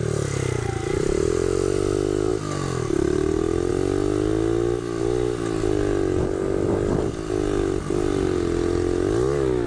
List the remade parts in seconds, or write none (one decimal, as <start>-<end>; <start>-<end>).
none